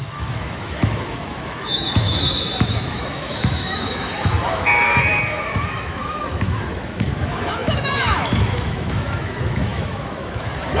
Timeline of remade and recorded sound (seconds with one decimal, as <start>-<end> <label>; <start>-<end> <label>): 0.0-10.8 remade